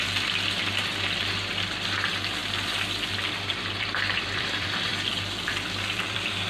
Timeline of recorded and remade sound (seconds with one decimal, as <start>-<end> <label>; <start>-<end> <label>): 0.0-4.9 remade; 4.9-5.5 recorded; 5.5-6.5 remade